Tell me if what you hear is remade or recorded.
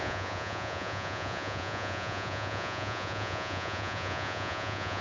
remade